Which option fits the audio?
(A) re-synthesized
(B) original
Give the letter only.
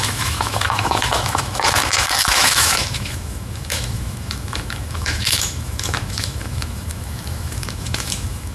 A